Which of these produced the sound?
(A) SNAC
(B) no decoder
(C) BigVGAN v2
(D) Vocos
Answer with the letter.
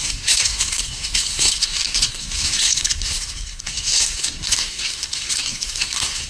A